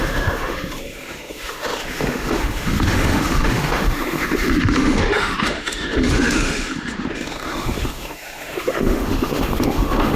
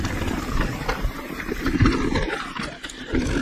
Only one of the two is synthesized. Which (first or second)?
first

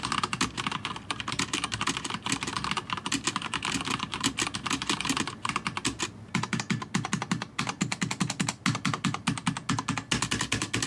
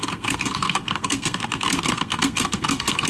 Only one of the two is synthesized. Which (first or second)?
second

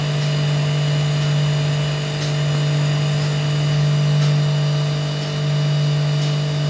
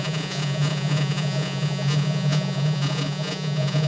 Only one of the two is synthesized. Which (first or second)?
second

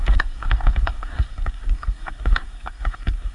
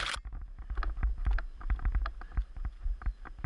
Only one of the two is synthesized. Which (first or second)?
first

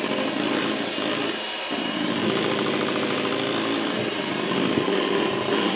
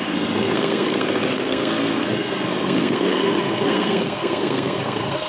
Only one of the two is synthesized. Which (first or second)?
second